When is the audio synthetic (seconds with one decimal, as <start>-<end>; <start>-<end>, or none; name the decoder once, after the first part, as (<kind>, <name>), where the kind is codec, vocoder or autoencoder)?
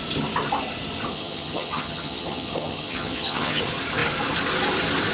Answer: 1.1-3.6 (vocoder, HiFi-GAN)